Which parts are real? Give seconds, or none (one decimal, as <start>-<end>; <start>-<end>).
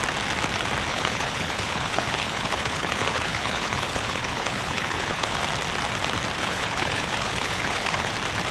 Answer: 0.0-0.9; 5.4-6.4; 8.1-8.5